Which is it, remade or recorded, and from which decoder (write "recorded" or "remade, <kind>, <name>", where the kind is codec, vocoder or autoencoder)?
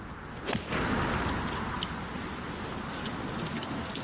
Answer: recorded